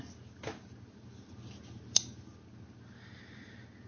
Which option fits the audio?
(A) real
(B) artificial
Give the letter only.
A